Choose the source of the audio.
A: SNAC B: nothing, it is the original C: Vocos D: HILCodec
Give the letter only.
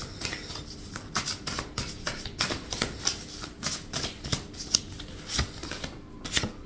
B